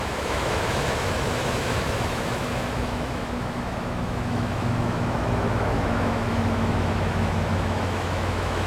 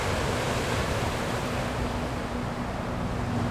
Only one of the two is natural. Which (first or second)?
second